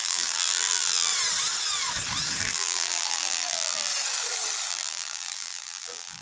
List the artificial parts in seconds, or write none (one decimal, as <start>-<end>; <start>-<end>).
0.0-1.1; 2.4-3.9; 4.7-6.2